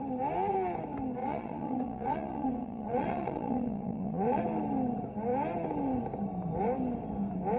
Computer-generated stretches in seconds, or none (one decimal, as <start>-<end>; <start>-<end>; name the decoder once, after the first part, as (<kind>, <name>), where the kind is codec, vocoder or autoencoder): 1.2-4.4 (vocoder, Vocos)